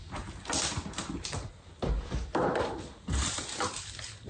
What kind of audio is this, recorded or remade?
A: remade